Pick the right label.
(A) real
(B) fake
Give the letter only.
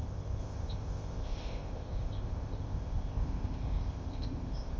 B